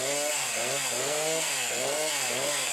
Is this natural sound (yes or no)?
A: no